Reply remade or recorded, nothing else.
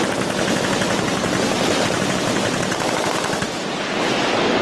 recorded